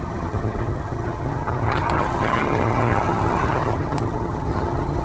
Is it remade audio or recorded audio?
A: remade